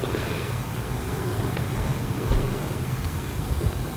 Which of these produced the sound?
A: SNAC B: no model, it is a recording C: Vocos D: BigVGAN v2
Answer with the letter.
A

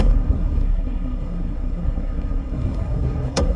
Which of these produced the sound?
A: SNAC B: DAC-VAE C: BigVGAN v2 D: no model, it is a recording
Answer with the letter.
A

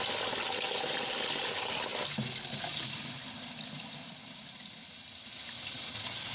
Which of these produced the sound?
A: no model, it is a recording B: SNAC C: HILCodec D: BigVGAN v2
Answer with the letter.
A